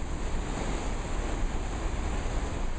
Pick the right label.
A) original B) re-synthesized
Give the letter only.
A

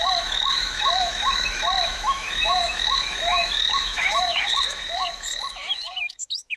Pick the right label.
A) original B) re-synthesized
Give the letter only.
B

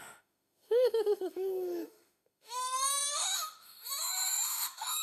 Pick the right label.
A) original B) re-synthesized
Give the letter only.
B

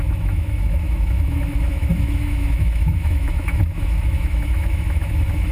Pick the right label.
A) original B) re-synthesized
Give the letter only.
B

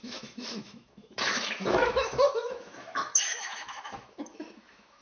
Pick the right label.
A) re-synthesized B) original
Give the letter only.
A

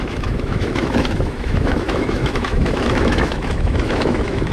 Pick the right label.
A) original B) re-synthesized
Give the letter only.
B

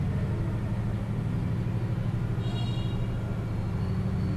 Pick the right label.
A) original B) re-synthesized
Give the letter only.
A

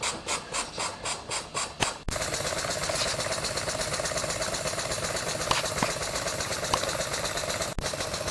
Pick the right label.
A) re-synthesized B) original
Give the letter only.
B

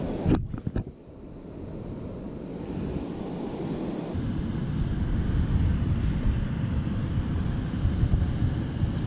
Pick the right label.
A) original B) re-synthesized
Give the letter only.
A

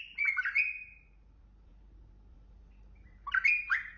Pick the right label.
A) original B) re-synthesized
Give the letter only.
A